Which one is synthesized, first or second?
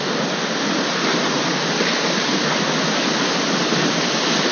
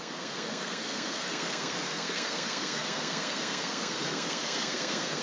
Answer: second